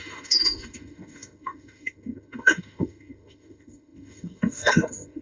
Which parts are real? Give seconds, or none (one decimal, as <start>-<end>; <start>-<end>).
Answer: none

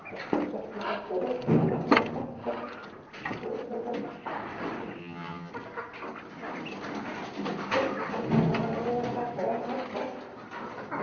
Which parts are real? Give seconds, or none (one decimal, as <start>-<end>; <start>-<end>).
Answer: 0.0-5.0; 5.5-11.0

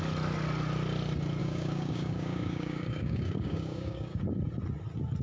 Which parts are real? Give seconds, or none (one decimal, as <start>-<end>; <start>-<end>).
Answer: 0.0-1.4; 4.2-5.2

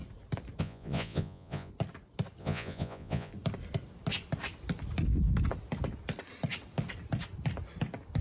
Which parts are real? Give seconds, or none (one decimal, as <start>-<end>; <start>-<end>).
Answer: 0.0-0.6; 1.7-2.4; 3.3-8.2

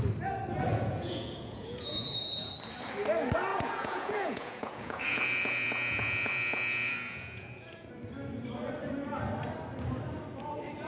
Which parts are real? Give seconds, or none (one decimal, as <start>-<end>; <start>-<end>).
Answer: 0.0-0.7; 2.5-3.5; 7.9-10.9

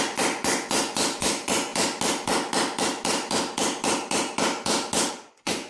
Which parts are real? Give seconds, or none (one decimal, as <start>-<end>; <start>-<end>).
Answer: 1.7-5.1

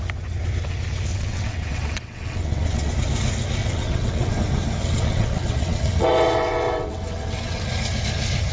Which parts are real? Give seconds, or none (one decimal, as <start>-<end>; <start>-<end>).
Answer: 0.0-1.1; 2.9-3.6; 4.3-4.8; 7.6-8.5